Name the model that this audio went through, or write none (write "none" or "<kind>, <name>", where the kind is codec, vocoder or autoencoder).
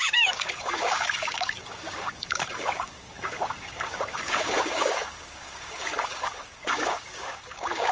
codec, DAC